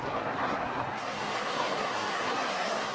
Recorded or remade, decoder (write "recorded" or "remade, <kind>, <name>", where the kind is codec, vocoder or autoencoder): remade, codec, SNAC